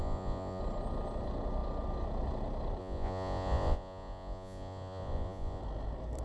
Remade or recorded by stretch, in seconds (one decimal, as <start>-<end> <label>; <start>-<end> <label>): 0.0-0.6 remade; 0.6-2.8 recorded; 2.8-5.6 remade; 5.6-6.2 recorded